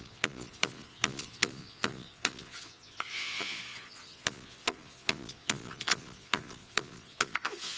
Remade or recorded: remade